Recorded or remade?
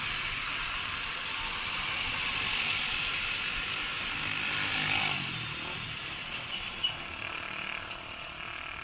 recorded